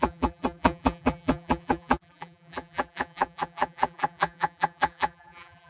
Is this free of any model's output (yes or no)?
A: no